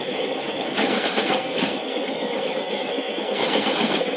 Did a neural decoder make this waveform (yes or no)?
yes